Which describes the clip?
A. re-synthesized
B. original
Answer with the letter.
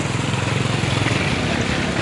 B